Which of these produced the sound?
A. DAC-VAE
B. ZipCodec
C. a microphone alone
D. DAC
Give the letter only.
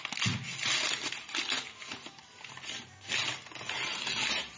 C